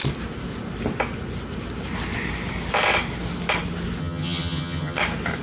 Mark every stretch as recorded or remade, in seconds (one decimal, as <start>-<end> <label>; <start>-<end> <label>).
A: 0.0-4.0 recorded; 4.0-5.0 remade; 5.0-5.4 recorded

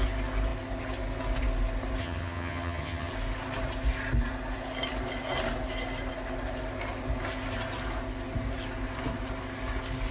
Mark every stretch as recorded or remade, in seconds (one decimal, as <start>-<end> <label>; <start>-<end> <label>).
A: 0.0-2.0 recorded; 2.0-3.1 remade; 3.1-10.1 recorded